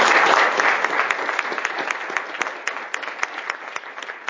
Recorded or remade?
recorded